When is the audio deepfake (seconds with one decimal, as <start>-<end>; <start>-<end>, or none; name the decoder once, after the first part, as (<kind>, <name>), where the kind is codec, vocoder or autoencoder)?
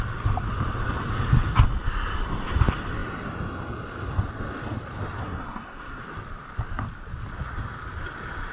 5.2-6.0 (codec, SNAC)